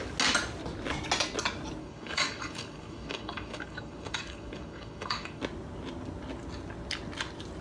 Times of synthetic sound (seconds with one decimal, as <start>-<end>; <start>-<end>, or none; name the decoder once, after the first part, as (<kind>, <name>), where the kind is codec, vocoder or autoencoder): 1.8-5.4 (codec, DAC)